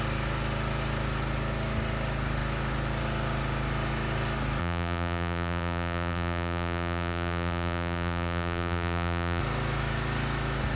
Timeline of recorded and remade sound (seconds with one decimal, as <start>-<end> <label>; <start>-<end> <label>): 0.0-4.6 recorded; 4.6-9.4 remade; 9.4-10.8 recorded